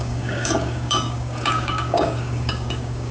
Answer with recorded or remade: remade